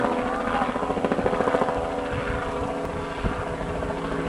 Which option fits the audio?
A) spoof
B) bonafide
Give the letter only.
B